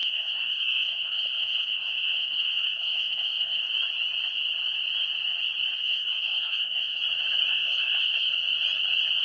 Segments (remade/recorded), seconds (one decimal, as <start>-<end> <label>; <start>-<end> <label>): 0.0-3.6 remade; 3.6-5.8 recorded; 5.8-7.0 remade; 7.0-7.5 recorded; 7.5-8.3 remade; 8.3-9.2 recorded